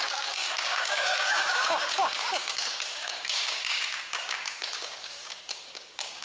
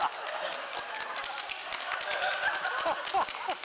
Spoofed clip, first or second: first